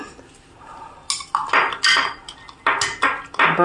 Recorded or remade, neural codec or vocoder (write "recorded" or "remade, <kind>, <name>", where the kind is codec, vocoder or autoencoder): recorded